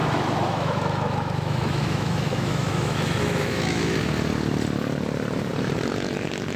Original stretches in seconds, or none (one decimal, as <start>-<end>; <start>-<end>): 4.0-6.6